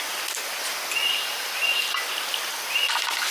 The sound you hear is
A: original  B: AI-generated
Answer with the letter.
A